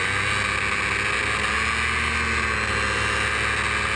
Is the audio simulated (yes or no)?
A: no